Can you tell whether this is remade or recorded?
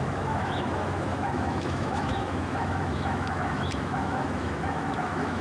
remade